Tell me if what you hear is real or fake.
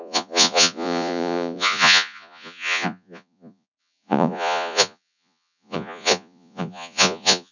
fake